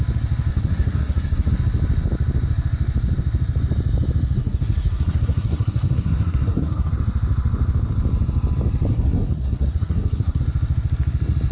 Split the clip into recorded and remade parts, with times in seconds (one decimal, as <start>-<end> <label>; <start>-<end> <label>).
0.0-0.5 recorded; 0.5-1.5 remade; 1.5-4.4 recorded; 4.4-6.9 remade; 6.9-8.9 recorded; 8.9-10.4 remade; 10.4-11.5 recorded